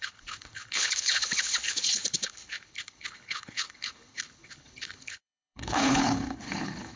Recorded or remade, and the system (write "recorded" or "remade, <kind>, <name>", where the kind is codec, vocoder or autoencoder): remade, codec, HILCodec